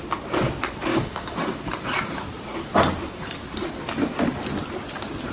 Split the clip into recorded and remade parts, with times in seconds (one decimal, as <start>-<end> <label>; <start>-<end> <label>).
0.0-0.9 recorded; 0.9-1.7 remade; 1.7-5.3 recorded